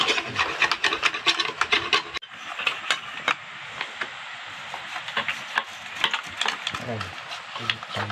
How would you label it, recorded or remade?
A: recorded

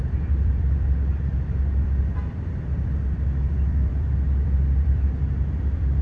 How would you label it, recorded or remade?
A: remade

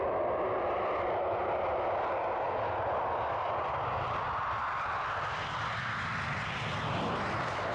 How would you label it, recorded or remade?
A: recorded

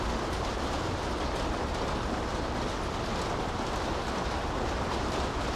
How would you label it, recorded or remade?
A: recorded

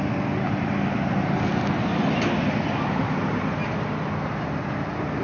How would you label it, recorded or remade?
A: recorded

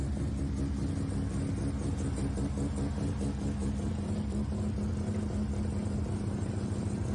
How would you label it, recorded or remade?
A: recorded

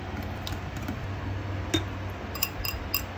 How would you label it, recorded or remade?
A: recorded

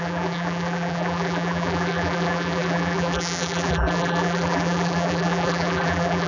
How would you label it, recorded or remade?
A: remade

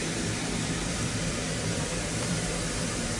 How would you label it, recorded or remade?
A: remade